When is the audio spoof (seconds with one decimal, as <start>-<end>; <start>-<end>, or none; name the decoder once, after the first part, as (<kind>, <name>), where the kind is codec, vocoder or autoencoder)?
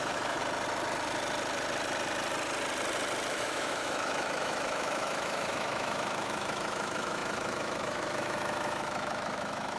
0.0-0.4 (autoencoder, DAC-VAE); 3.3-9.8